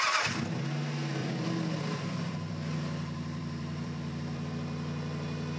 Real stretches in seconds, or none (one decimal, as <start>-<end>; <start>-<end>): 0.0-1.2; 4.5-5.6